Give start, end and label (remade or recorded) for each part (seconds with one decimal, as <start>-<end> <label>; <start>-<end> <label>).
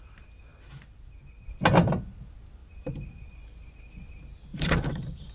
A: 0.0-4.5 recorded; 4.5-5.3 remade